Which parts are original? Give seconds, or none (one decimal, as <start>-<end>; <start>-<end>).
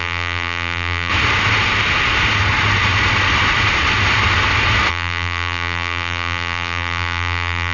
1.1-4.9